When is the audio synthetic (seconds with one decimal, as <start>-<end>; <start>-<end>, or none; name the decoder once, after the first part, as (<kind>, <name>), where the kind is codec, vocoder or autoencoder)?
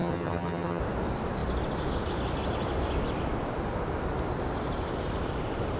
0.0-0.8 (vocoder, HiFi-GAN)